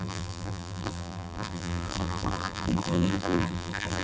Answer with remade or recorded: remade